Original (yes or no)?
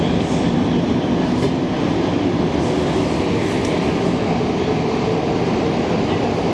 yes